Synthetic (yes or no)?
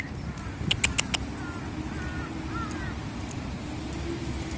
no